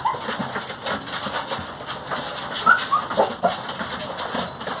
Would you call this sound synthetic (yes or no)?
no